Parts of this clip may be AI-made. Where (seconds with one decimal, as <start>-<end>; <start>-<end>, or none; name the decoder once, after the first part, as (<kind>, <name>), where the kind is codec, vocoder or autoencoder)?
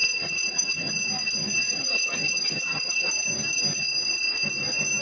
0.0-0.9 (vocoder, HiFi-GAN); 1.6-3.1